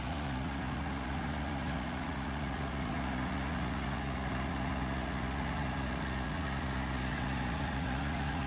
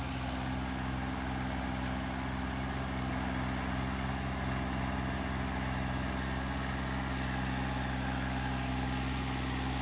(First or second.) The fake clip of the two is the first